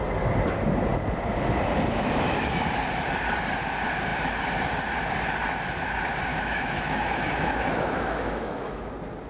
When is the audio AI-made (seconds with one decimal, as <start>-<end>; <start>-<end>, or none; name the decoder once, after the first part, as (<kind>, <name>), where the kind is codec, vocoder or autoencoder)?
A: 6.3-8.9 (autoencoder, DAC-VAE)